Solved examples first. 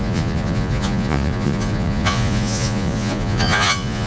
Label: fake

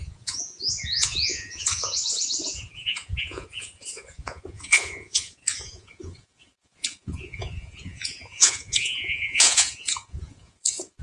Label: fake